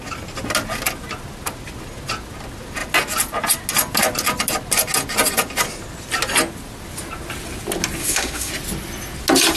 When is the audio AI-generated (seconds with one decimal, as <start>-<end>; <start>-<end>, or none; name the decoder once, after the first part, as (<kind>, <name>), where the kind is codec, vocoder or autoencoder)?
8.0-8.5 (autoencoder, DAC-VAE)